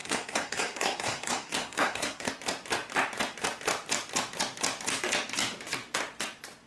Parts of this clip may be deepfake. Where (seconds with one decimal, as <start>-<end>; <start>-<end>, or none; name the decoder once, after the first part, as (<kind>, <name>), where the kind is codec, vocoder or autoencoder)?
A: 0.0-2.3 (codec, SNAC)